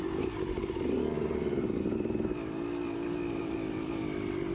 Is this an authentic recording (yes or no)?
no